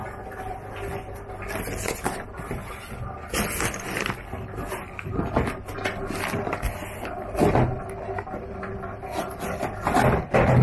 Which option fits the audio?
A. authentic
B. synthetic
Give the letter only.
A